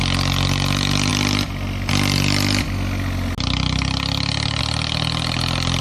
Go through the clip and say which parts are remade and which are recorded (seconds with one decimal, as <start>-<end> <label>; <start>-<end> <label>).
0.0-5.8 recorded